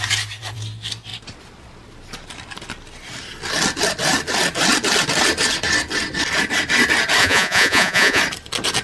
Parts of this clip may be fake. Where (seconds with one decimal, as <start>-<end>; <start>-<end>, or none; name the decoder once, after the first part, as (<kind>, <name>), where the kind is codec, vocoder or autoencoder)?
7.2-8.2 (vocoder, Vocos)